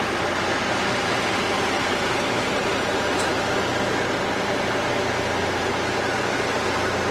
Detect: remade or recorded recorded